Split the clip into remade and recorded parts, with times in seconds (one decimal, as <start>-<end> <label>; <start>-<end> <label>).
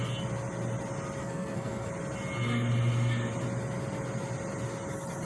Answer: 0.0-1.2 recorded; 1.2-1.9 remade; 1.9-5.3 recorded